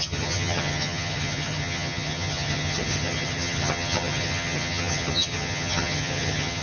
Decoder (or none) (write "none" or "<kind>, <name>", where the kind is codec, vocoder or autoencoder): vocoder, HiFi-GAN